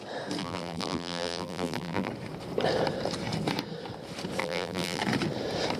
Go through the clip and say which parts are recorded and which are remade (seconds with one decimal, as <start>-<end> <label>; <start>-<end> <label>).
0.0-0.4 recorded; 0.4-2.1 remade; 2.1-4.4 recorded; 4.4-5.0 remade; 5.0-5.8 recorded